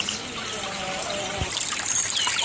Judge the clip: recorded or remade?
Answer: recorded